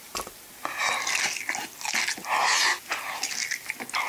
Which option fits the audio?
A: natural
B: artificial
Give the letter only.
A